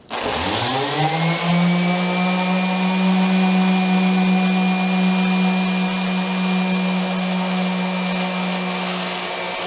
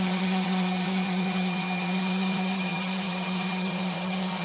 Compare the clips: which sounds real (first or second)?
first